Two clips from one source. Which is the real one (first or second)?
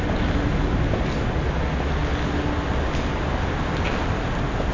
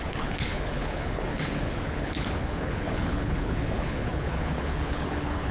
first